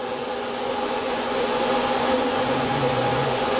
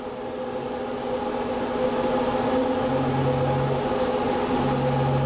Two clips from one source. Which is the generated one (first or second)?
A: first